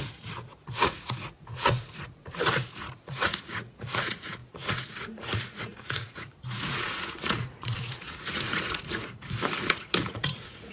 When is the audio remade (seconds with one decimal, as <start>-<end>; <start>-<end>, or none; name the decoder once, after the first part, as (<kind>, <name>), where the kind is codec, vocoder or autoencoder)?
0.0-10.7 (vocoder, Vocos)